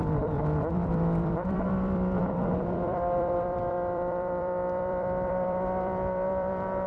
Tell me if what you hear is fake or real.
fake